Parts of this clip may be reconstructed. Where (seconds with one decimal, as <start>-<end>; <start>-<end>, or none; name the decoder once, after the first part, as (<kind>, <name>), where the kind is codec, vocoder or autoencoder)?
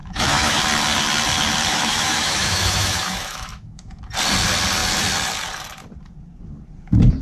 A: 0.0-0.6 (autoencoder, DAC-VAE); 1.7-4.0